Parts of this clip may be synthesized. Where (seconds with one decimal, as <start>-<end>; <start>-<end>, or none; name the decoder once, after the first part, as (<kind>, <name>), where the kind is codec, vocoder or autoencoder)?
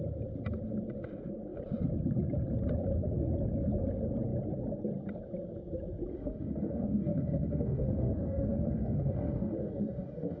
6.1-10.4 (autoencoder, DAC-VAE)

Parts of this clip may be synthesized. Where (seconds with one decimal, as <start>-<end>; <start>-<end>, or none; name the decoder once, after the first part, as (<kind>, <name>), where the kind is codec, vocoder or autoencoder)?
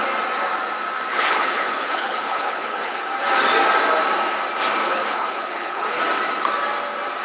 1.1-3.1 (codec, HILCodec); 4.8-6.0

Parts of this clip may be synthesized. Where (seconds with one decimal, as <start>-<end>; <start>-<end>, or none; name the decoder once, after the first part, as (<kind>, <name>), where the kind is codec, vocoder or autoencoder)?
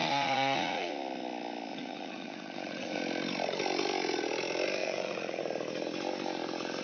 0.0-0.9 (vocoder, Vocos); 1.7-3.0; 4.8-5.4